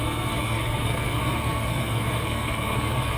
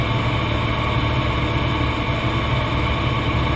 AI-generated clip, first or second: first